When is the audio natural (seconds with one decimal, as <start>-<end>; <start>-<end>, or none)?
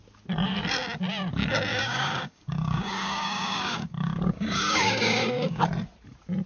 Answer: 0.0-1.7; 5.6-6.5